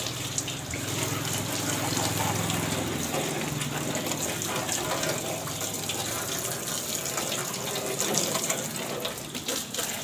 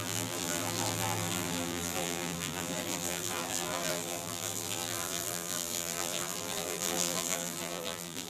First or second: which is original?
first